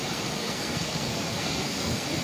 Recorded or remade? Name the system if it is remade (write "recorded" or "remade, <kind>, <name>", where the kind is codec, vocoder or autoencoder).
remade, codec, SNAC